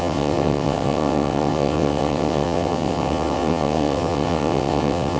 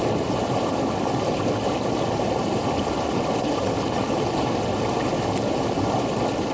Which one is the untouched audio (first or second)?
second